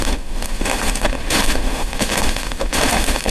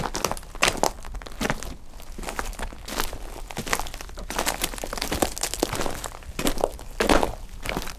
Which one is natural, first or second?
second